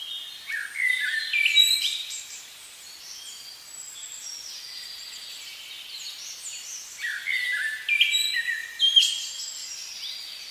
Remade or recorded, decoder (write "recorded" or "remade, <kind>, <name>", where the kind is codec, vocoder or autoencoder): recorded